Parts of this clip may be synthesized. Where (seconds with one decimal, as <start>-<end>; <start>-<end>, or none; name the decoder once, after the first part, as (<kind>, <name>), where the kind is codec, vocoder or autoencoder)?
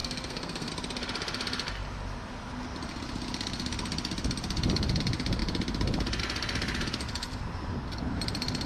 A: 0.0-0.7 (codec, SNAC)